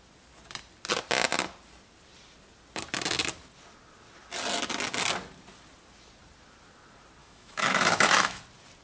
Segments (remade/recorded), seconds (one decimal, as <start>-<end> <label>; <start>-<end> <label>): 0.0-7.2 recorded; 7.2-8.4 remade; 8.4-8.8 recorded